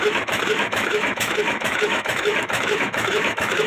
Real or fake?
fake